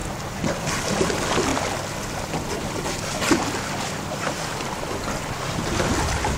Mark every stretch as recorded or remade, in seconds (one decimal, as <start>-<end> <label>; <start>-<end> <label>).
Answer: 0.0-6.4 recorded